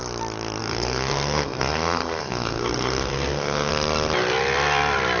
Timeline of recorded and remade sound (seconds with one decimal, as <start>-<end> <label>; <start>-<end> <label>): 0.0-0.6 recorded; 0.6-3.7 remade; 3.7-5.2 recorded